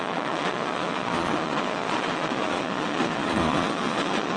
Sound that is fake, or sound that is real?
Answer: fake